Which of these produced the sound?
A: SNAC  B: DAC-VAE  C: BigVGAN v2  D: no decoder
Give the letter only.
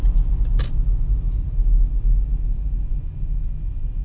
D